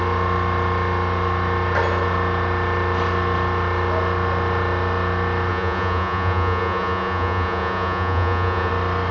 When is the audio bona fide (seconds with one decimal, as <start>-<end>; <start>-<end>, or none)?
0.0-5.5; 8.7-9.1